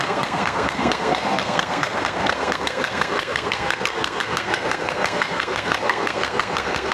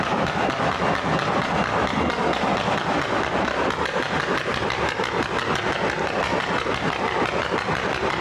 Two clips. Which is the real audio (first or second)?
second